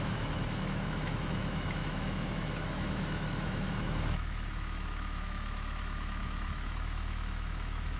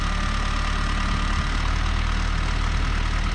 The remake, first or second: first